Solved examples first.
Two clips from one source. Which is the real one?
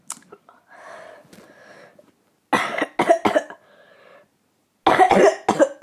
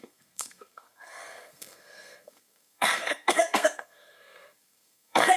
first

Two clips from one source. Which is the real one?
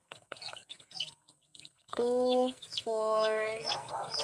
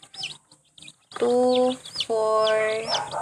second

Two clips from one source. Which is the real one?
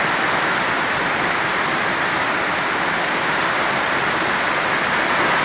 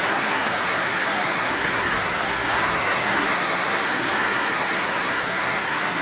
first